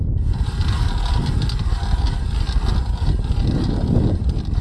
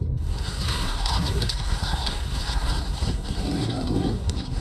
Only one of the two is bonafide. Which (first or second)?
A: first